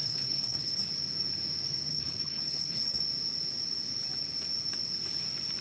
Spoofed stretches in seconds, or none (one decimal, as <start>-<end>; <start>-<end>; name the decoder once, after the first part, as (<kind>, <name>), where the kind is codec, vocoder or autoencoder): 0.0-0.9 (codec, HILCodec); 1.9-3.0